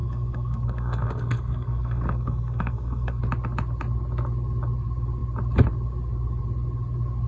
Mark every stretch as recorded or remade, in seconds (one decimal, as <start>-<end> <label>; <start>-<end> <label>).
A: 0.0-3.2 remade; 3.2-7.3 recorded